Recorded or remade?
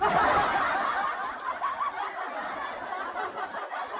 recorded